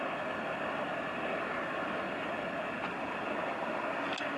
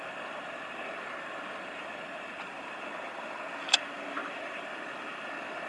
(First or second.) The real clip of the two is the first